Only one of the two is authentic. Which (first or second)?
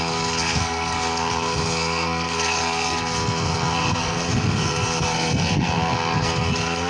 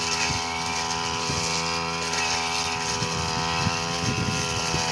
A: second